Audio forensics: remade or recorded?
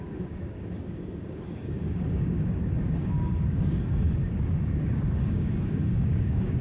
remade